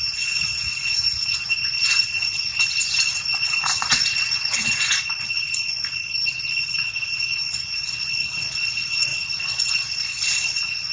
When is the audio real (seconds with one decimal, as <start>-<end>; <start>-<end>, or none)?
5.5-6.3